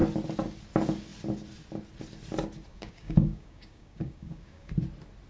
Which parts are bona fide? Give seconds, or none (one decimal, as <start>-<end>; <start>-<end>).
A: 0.0-2.7; 4.7-5.3